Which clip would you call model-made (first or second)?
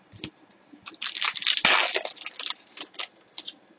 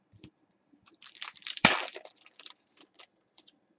second